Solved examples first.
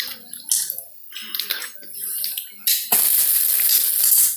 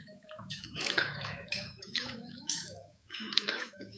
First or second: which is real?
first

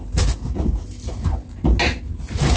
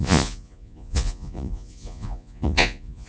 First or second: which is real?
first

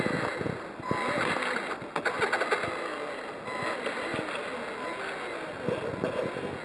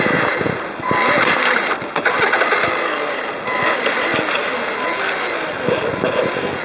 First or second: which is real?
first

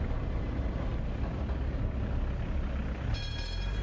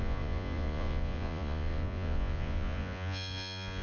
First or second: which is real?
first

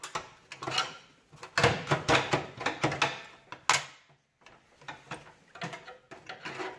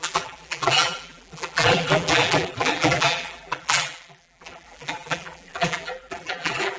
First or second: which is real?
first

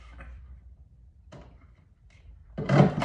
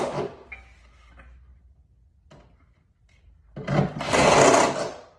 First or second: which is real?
second